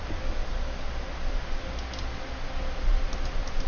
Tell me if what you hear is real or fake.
real